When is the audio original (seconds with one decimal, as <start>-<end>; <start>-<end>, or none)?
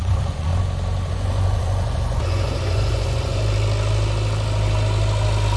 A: 0.5-1.1; 3.4-5.6